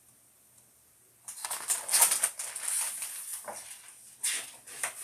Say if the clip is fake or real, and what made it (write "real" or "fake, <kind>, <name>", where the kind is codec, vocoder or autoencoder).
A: real